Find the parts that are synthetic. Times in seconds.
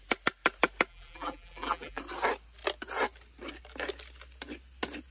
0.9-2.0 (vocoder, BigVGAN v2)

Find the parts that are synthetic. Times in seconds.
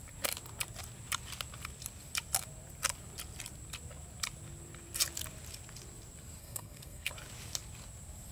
6.4-7.1 (codec, SNAC)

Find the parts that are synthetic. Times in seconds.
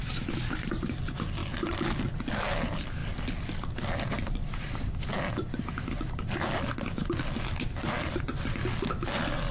none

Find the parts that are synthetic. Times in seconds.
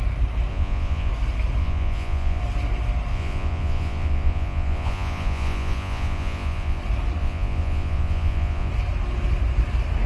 0.5-1.1 (vocoder, Vocos); 1.6-2.4; 3.1-6.8; 7.2-8.7